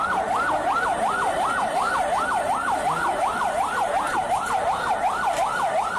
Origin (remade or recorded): remade